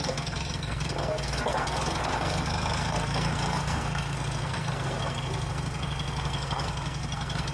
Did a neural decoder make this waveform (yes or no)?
yes